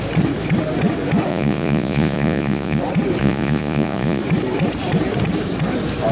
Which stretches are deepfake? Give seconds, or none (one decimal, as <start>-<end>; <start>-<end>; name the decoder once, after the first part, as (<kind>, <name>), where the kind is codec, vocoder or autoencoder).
1.3-2.8 (vocoder, Vocos); 3.2-4.2

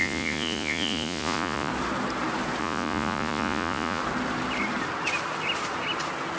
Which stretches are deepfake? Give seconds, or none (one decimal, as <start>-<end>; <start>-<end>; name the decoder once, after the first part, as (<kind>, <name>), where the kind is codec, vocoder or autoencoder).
0.0-1.7 (vocoder, Vocos); 2.6-4.0